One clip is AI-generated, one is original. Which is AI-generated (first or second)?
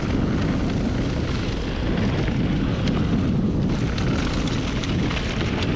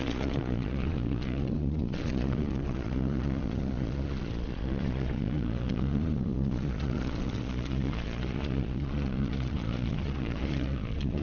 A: second